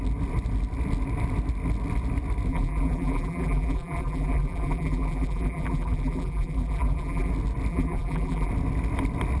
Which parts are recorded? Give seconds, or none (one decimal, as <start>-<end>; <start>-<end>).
0.0-2.5; 7.3-7.7; 8.5-9.4